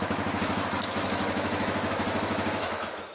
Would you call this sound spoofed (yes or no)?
yes